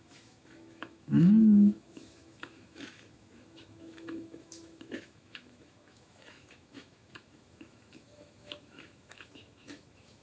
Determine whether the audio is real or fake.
fake